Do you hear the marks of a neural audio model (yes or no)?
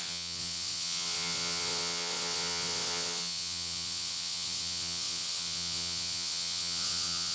yes